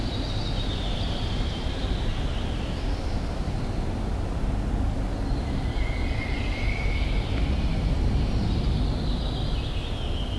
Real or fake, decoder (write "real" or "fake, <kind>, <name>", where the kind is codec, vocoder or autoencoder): real